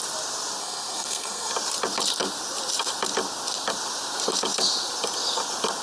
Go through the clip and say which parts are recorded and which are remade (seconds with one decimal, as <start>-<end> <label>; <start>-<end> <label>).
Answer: 0.0-0.6 recorded; 0.6-1.5 remade; 1.5-5.8 recorded